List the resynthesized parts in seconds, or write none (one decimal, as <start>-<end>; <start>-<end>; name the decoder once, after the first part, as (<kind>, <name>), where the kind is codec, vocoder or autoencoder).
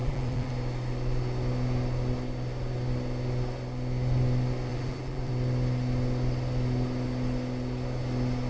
0.0-0.5 (vocoder, BigVGAN v2); 4.7-5.3